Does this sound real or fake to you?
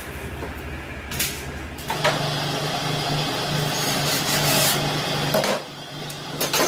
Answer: real